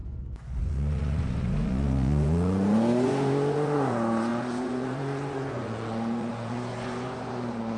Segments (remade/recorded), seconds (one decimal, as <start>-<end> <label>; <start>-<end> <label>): 0.0-7.8 remade